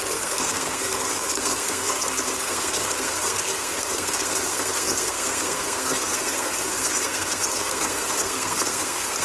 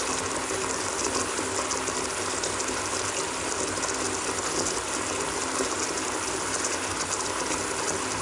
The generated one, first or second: first